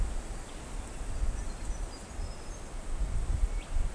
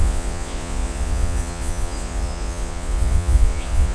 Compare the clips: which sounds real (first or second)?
first